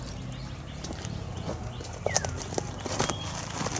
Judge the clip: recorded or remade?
recorded